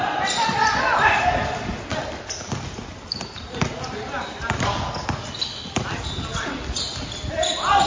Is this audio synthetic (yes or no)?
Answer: no